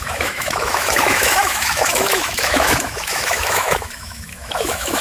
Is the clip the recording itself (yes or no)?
no